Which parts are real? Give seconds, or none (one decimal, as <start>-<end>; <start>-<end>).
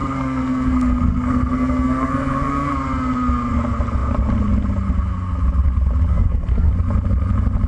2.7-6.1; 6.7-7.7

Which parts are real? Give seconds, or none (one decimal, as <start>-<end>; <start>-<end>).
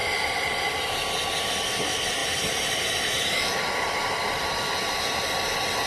0.9-2.2; 4.7-5.9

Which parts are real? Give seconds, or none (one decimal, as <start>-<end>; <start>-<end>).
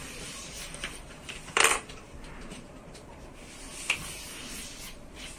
3.2-5.4